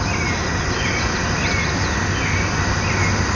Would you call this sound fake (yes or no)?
no